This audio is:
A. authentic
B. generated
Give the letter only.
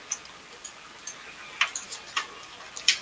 A